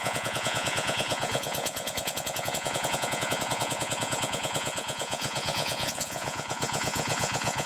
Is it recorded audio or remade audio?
remade